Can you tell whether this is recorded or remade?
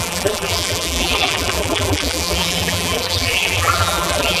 remade